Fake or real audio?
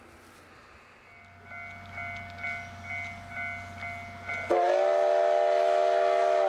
real